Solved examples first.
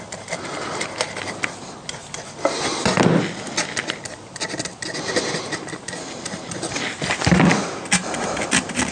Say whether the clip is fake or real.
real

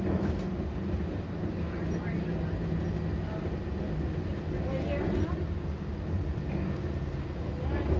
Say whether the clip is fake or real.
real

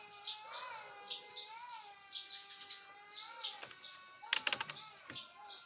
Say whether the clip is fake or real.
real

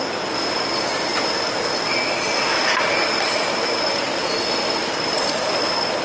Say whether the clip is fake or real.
real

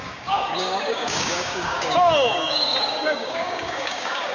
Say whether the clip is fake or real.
fake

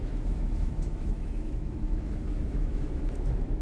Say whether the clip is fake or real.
fake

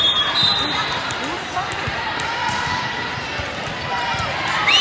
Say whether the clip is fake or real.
fake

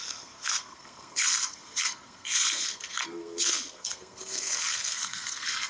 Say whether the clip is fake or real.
fake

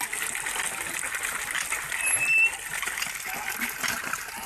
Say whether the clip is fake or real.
real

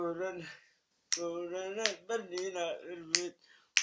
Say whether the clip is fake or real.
real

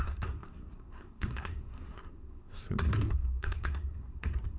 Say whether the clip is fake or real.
fake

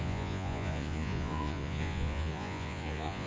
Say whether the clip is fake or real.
fake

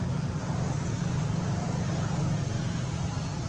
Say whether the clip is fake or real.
real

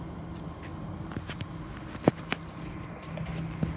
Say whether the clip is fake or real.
real